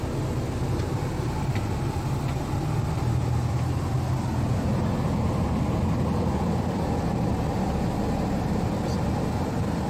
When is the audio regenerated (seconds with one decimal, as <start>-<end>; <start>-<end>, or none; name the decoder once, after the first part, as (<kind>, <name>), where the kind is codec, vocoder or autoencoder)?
4.5-5.1 (vocoder, BigVGAN v2)